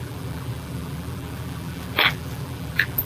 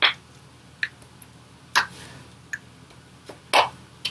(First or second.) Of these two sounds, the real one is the second